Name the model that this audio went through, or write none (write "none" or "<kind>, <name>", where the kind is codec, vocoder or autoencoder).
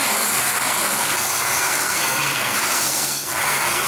codec, SNAC